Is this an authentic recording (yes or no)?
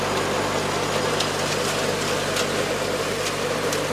yes